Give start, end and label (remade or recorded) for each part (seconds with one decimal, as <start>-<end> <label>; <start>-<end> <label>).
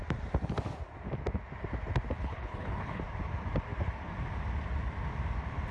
0.0-2.2 recorded; 2.2-3.0 remade; 3.0-5.7 recorded